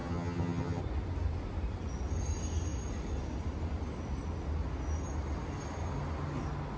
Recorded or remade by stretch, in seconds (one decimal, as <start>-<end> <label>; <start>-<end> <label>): 0.0-0.8 remade; 0.8-6.8 recorded